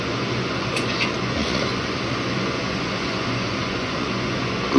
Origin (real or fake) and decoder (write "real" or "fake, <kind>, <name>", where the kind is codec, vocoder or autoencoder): fake, vocoder, Vocos